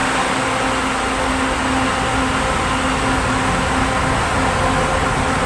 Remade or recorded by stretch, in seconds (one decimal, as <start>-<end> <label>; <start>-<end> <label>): 0.0-5.5 recorded